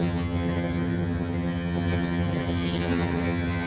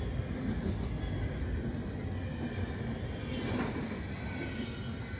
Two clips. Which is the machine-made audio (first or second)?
first